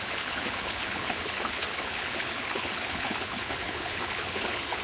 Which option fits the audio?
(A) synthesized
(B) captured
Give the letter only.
A